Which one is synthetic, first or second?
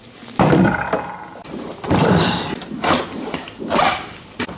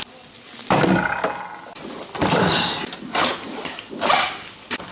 first